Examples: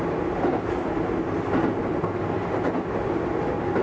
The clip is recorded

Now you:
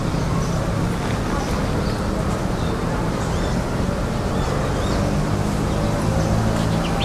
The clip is recorded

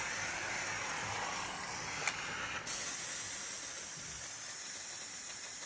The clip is recorded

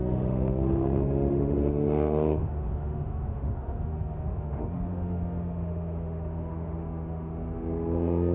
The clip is remade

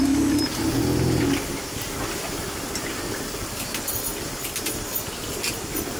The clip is recorded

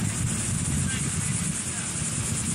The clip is recorded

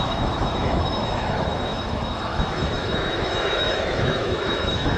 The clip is remade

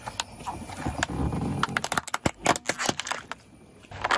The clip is recorded